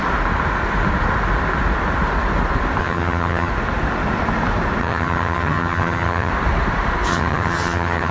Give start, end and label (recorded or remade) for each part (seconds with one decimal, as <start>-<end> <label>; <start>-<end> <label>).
0.0-2.8 recorded; 2.8-3.5 remade; 3.5-4.8 recorded; 4.8-6.3 remade; 6.3-7.1 recorded; 7.1-8.1 remade